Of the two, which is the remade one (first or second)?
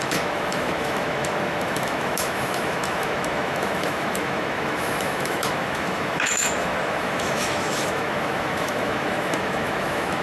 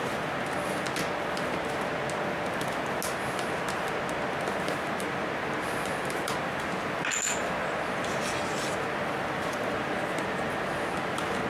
first